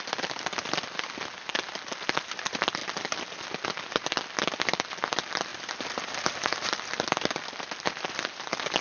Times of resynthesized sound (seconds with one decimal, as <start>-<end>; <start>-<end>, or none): 0.0-2.8; 3.9-8.8